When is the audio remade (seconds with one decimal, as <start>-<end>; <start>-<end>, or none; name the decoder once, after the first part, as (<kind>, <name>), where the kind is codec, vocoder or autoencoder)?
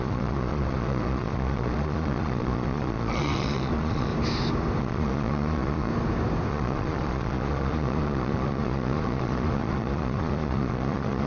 0.0-4.1 (vocoder, Vocos); 4.8-5.9; 6.5-11.3